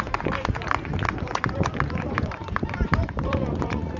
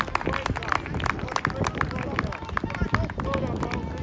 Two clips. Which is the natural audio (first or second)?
second